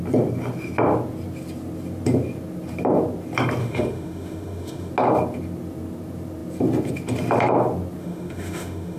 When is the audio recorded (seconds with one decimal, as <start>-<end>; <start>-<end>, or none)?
0.0-3.6; 4.9-8.0